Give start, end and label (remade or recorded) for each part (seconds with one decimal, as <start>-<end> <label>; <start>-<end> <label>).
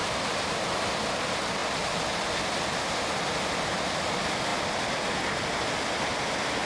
0.0-6.7 recorded